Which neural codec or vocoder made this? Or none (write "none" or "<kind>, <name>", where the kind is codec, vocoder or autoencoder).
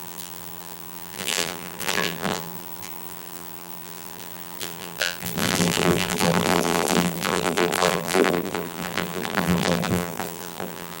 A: vocoder, BigVGAN v2